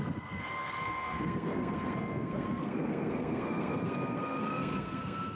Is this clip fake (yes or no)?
yes